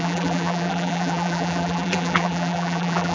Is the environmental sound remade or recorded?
remade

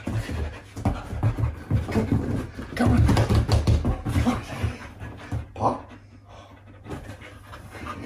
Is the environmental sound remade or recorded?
recorded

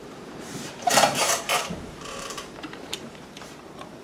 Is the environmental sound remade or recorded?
remade